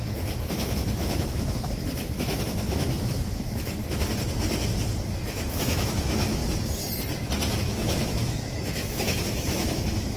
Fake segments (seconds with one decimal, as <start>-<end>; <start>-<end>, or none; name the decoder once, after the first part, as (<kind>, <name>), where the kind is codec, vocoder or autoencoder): 0.0-3.8 (autoencoder, DAC-VAE); 5.1-6.4; 7.6-10.2